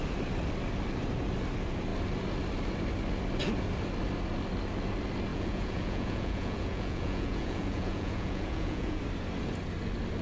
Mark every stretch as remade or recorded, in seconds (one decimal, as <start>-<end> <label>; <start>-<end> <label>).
0.0-5.3 recorded; 5.3-9.0 remade; 9.0-10.2 recorded